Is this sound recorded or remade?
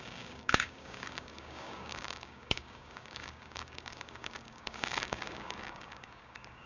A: remade